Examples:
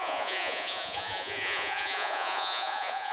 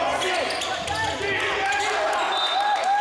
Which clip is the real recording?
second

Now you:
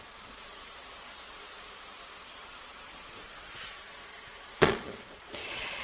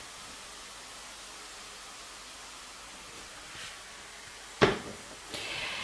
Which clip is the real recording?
second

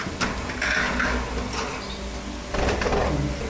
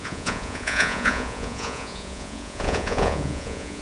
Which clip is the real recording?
first